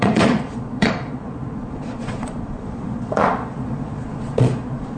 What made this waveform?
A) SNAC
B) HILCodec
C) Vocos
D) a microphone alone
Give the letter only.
C